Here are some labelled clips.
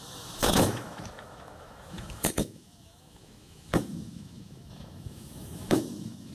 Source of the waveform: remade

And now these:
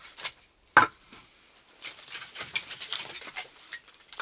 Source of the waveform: recorded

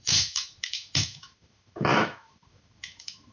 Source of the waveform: remade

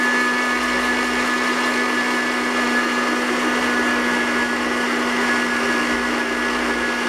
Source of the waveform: recorded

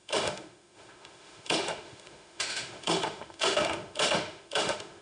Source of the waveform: remade